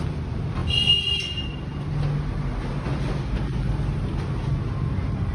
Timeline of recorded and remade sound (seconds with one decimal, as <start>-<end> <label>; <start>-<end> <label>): 0.0-5.3 recorded